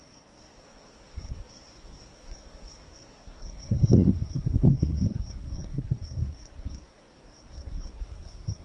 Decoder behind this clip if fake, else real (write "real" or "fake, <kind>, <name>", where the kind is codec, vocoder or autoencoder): fake, codec, SNAC